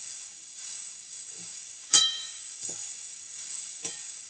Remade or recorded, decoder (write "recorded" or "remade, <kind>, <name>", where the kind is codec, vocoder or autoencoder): remade, codec, DAC